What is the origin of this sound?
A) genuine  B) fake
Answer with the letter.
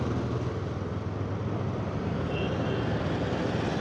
A